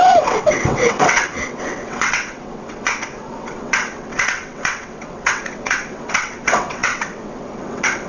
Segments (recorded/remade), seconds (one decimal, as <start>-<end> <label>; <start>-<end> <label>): 0.0-8.1 remade